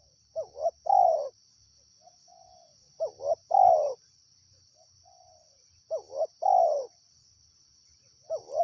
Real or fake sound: real